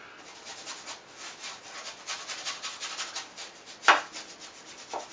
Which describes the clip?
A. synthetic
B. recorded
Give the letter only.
B